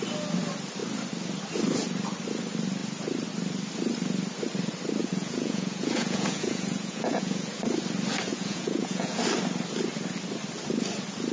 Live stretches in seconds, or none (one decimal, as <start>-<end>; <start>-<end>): 0.0-5.0; 7.6-8.3; 9.2-11.3